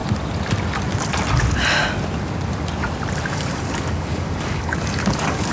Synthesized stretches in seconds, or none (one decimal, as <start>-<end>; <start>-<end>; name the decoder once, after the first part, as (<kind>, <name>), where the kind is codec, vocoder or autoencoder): 3.3-5.5 (codec, DAC)